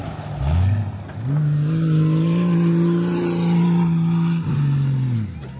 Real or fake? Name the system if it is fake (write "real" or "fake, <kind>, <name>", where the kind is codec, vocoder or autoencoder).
real